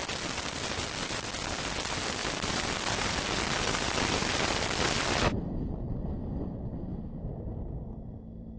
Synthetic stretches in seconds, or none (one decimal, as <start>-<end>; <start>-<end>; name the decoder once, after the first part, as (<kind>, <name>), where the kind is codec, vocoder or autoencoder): none

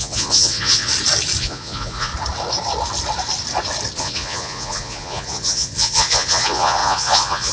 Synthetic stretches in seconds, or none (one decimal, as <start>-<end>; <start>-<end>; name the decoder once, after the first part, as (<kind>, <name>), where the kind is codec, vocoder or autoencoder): 0.0-0.9 (vocoder, Vocos); 1.4-2.1; 4.0-7.5

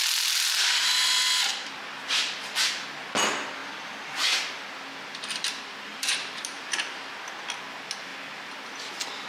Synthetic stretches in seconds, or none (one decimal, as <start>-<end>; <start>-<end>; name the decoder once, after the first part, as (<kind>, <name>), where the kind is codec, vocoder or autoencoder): 1.5-2.0 (vocoder, BigVGAN v2); 5.9-7.1

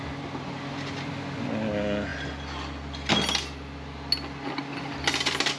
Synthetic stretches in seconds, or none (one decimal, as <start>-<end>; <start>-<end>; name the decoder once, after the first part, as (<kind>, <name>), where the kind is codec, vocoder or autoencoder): none

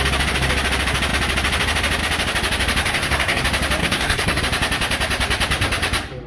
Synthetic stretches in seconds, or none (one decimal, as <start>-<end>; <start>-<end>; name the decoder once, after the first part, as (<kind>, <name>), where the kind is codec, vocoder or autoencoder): 2.8-3.4 (codec, SNAC); 3.8-4.4

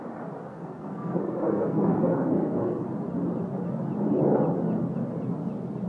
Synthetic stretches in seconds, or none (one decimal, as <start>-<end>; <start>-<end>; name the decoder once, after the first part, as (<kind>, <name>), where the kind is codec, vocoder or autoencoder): 0.5-2.9 (codec, SNAC)